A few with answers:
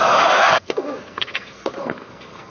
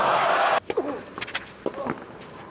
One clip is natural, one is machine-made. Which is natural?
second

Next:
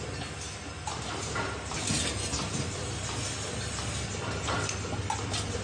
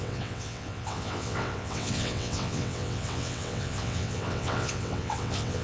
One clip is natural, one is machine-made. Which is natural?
first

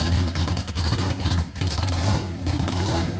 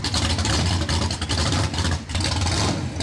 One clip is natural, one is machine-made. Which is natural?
second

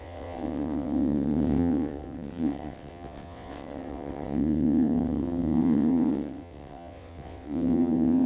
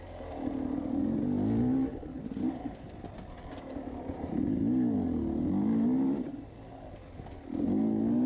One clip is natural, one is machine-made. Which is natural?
second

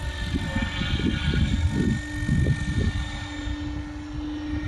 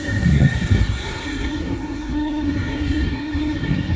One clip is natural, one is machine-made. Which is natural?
first